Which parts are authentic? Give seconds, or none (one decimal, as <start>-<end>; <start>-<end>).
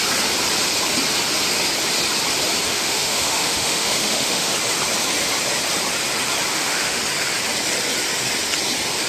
0.0-2.7; 4.5-6.5; 7.0-9.1